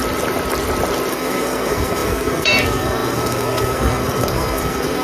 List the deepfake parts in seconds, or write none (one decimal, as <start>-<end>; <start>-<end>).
1.1-5.0